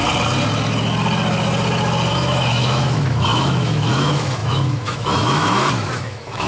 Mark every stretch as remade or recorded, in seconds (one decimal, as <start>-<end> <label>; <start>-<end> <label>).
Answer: 0.0-2.1 recorded; 2.1-6.5 remade